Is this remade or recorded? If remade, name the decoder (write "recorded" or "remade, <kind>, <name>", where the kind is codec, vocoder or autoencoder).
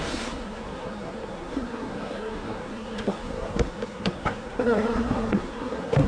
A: remade, codec, SNAC